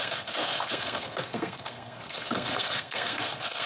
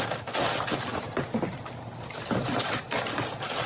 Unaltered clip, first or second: second